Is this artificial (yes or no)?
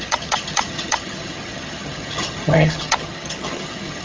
yes